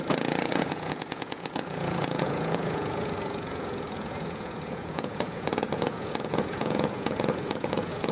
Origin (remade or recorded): remade